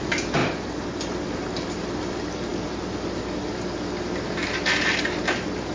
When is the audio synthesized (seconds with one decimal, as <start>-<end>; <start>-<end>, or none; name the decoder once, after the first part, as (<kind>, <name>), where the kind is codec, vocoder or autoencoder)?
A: none